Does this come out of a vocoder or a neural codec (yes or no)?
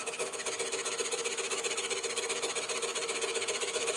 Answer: yes